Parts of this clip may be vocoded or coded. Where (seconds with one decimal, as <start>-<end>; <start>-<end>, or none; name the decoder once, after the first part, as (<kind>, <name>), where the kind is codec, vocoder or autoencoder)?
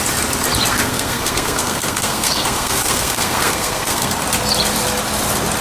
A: 0.7-4.1 (codec, SNAC)